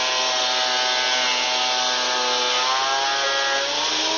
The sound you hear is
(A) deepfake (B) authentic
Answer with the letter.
B